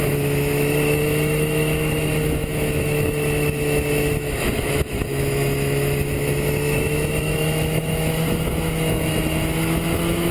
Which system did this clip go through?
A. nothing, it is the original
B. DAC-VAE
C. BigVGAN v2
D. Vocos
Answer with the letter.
B